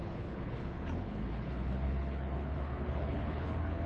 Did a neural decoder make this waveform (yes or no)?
yes